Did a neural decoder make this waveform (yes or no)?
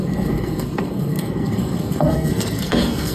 yes